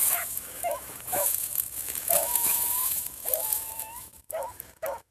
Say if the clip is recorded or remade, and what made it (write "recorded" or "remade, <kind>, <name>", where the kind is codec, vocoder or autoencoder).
remade, autoencoder, DAC-VAE